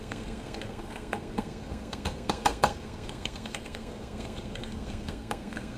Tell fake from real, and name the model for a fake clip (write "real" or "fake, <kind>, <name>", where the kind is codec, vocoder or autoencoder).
fake, codec, SNAC